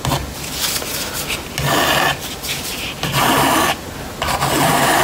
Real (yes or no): yes